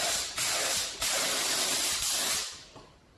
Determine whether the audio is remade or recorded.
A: recorded